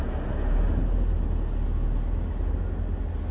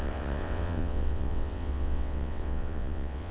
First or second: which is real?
first